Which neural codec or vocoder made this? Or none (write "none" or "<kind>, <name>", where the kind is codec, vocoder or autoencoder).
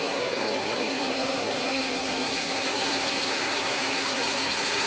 codec, SNAC